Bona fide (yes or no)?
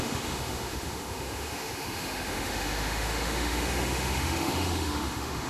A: no